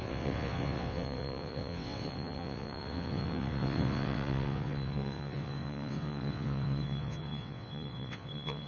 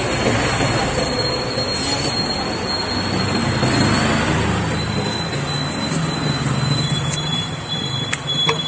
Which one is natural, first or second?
second